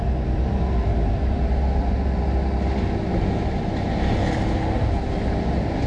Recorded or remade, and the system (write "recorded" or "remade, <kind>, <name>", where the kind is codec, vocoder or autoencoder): recorded